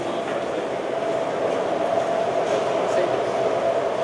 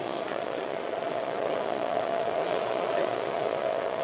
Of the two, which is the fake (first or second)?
second